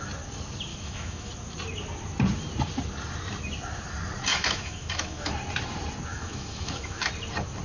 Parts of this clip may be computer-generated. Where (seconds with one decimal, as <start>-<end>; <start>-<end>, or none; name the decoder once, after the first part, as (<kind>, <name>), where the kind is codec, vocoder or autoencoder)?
0.7-1.3 (autoencoder, DAC-VAE); 4.3-5.3; 6.1-7.1